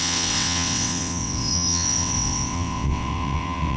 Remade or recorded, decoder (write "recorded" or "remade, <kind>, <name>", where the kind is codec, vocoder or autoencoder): remade, vocoder, WaveNeXt